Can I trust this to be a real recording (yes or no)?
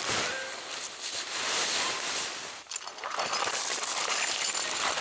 yes